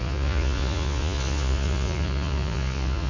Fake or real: fake